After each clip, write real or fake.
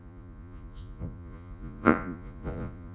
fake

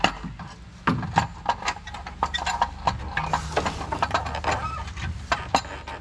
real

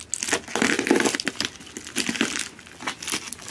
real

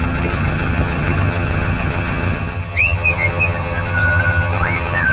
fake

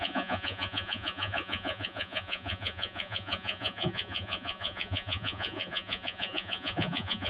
fake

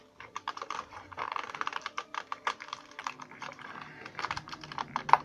fake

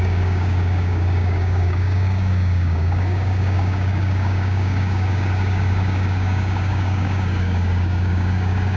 fake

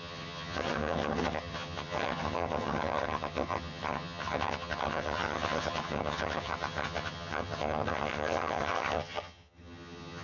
fake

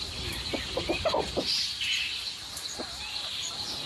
real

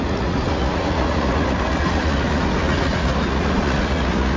fake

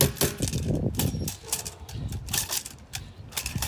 real